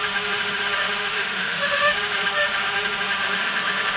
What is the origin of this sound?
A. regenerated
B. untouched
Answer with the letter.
A